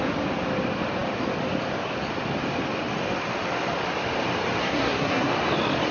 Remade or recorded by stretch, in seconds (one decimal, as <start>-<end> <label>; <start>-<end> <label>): 0.0-4.6 recorded; 4.6-5.3 remade; 5.3-5.9 recorded